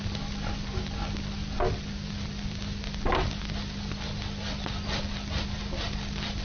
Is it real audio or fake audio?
real